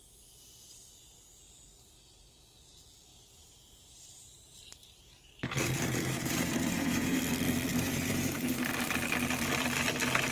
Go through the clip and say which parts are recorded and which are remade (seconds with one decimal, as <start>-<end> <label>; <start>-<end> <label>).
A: 0.0-3.1 recorded; 3.1-7.2 remade; 7.2-7.7 recorded; 7.7-8.7 remade; 8.7-10.3 recorded